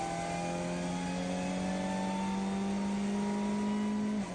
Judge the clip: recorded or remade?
recorded